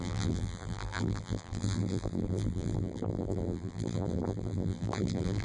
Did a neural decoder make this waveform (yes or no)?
yes